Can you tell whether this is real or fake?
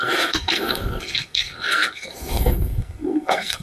fake